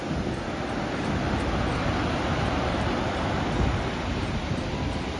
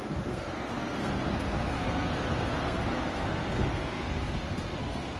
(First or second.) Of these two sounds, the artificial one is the second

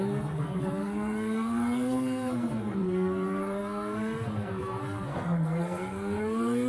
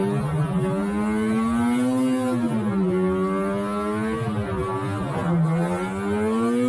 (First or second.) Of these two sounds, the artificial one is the first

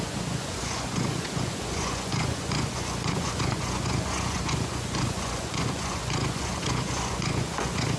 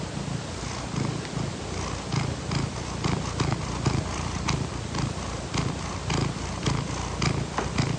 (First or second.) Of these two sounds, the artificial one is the first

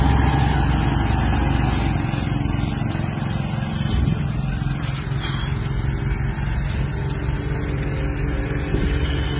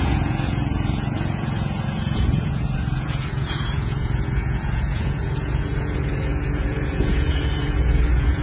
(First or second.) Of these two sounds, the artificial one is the second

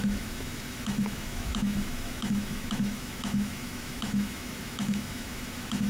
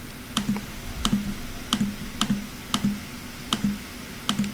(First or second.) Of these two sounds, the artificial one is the first